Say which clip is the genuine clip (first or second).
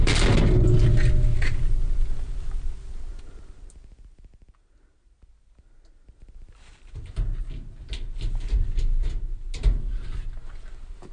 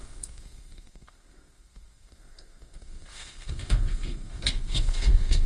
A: first